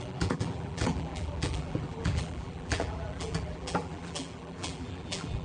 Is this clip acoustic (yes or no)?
no